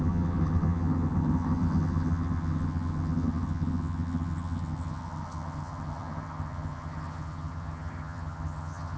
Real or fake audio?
fake